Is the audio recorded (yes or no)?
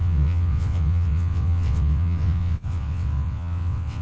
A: no